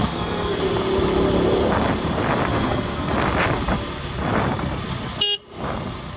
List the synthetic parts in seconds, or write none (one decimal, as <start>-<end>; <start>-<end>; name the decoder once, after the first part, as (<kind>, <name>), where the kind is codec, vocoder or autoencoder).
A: 0.0-0.6 (codec, SNAC); 2.5-3.1